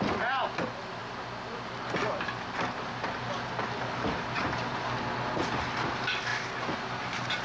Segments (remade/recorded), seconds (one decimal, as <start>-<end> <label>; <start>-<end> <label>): 0.0-7.4 recorded